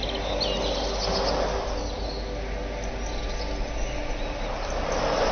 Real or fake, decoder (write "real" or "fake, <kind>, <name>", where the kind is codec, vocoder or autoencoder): real